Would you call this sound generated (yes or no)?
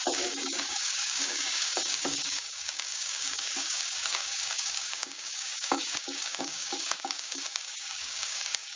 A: yes